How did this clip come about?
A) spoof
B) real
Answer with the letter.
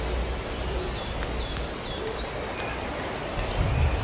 B